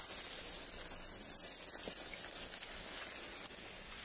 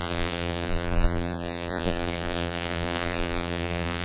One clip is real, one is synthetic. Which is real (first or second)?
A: first